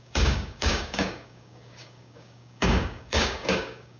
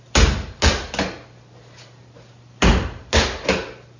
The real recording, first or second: second